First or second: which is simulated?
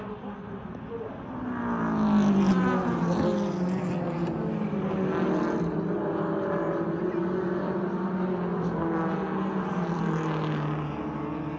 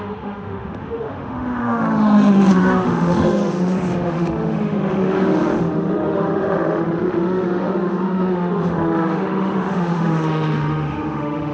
second